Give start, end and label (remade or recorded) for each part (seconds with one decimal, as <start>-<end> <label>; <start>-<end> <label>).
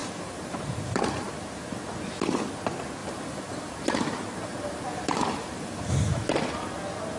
0.0-1.3 remade; 1.3-3.0 recorded; 3.0-5.9 remade; 5.9-7.2 recorded